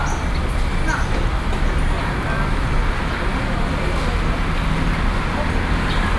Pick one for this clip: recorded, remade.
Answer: recorded